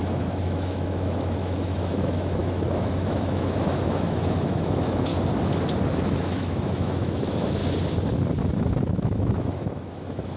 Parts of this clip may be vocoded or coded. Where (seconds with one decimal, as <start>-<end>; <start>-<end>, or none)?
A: 0.0-5.1; 6.0-7.6; 8.8-10.4